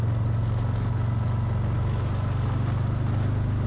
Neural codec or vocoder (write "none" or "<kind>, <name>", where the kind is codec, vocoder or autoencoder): none